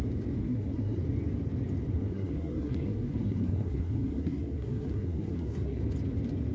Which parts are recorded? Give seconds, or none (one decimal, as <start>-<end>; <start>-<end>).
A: 0.0-0.4; 1.0-1.9; 5.8-6.5